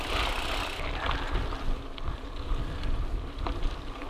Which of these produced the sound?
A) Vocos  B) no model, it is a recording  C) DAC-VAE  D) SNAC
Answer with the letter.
B